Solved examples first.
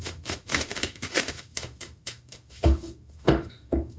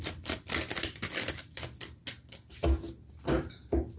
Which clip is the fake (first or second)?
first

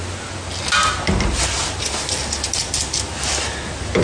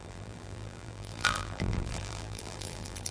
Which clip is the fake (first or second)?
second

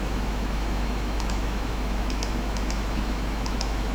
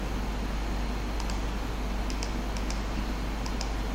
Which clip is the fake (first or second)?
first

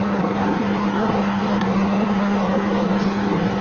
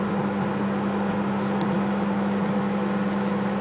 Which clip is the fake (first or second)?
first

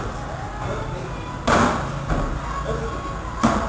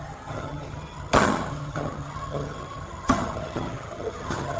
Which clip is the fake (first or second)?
second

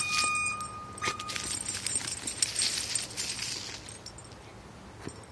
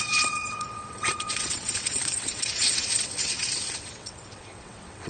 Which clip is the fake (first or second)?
second